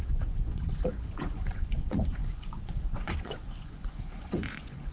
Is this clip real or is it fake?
fake